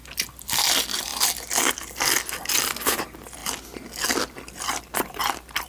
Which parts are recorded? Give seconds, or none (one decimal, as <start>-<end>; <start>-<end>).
0.0-5.7